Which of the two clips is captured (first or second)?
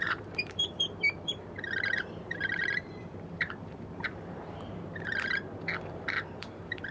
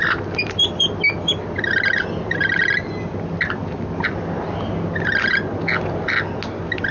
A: second